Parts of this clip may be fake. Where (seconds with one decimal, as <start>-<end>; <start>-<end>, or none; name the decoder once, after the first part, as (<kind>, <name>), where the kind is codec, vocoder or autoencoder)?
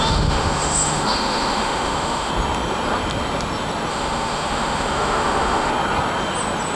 0.0-2.3 (autoencoder, DAC-VAE); 3.9-5.7